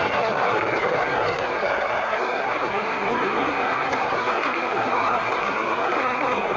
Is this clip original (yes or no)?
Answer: no